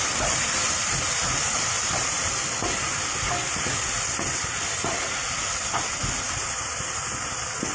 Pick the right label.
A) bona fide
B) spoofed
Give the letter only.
A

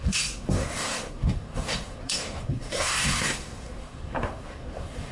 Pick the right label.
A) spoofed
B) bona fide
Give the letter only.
A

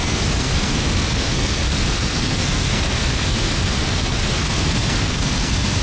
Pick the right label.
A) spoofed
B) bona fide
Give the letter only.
A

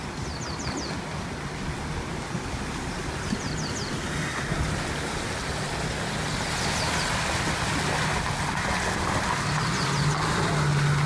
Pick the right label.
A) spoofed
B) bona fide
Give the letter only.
B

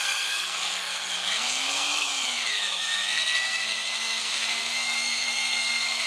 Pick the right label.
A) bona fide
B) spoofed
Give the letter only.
B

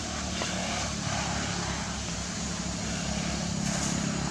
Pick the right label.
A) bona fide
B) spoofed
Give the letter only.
A